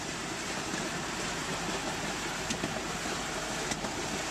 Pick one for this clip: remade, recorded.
remade